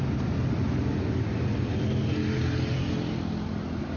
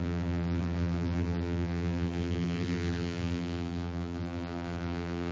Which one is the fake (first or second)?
second